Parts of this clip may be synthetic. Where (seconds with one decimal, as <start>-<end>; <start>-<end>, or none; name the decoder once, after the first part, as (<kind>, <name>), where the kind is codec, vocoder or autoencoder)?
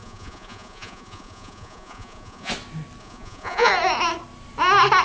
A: 0.0-2.5 (vocoder, Vocos); 3.0-3.7